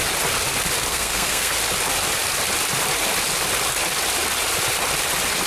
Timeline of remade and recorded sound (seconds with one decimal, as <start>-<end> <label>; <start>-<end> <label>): 0.0-0.9 recorded; 0.9-1.5 remade; 1.5-5.5 recorded